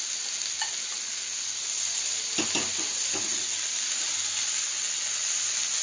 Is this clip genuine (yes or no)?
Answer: yes